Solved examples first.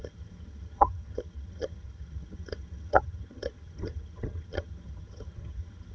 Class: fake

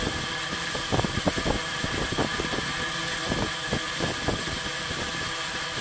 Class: real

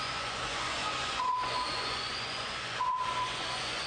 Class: fake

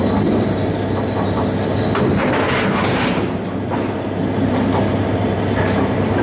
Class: real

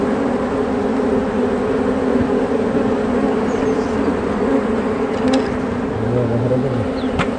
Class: real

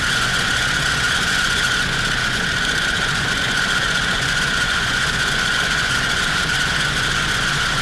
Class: fake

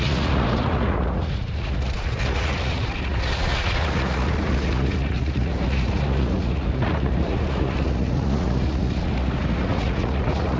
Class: fake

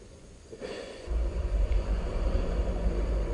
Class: fake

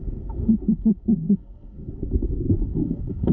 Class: fake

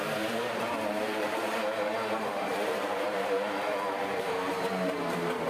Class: fake